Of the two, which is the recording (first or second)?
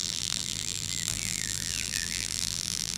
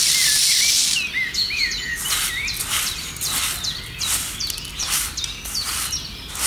second